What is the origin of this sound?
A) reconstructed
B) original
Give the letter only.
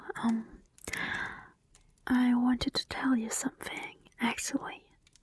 B